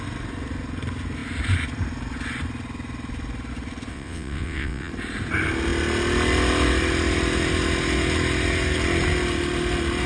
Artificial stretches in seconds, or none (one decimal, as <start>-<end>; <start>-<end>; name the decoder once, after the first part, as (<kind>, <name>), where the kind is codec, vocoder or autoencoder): 3.9-4.9 (vocoder, WaveNeXt)